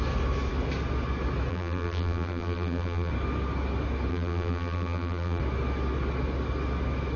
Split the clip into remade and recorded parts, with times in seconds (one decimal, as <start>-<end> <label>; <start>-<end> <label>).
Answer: 0.0-1.5 recorded; 1.5-3.1 remade; 3.1-4.1 recorded; 4.1-5.4 remade; 5.4-7.2 recorded